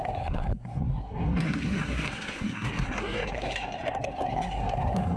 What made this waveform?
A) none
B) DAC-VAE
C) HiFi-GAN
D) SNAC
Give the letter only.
D